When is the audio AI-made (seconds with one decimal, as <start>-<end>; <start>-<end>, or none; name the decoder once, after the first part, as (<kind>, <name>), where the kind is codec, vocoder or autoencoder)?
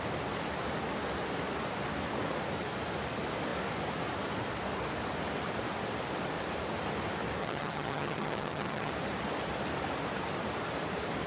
7.4-8.9 (vocoder, HiFi-GAN)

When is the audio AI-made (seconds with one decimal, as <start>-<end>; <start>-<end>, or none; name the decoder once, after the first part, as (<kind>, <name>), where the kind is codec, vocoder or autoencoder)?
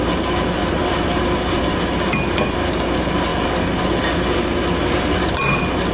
0.6-1.2 (vocoder, BigVGAN v2)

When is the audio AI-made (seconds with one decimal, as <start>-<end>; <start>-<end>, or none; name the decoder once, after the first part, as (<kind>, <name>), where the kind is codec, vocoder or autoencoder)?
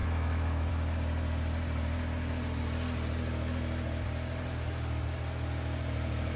0.0-0.7 (autoencoder, DAC-VAE)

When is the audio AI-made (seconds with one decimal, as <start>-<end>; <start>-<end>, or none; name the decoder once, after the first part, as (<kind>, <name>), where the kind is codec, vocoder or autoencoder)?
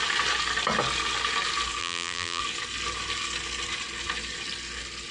1.8-2.4 (vocoder, BigVGAN v2)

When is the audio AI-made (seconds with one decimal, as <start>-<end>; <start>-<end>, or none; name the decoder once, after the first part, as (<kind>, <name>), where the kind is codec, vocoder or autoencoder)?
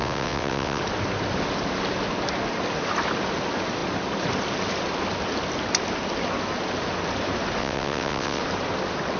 0.0-0.8 (vocoder, WaveNeXt); 7.6-8.4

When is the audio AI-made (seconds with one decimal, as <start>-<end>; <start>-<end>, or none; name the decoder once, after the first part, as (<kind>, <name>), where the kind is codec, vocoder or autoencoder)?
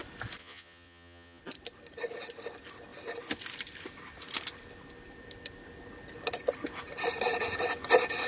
0.4-1.4 (vocoder, Vocos)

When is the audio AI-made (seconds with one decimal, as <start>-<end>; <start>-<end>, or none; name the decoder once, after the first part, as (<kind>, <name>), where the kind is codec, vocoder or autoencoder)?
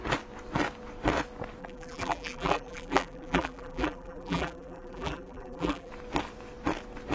1.6-5.9 (vocoder, BigVGAN v2)